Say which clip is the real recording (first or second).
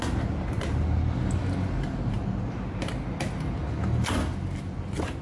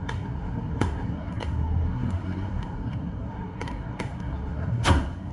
first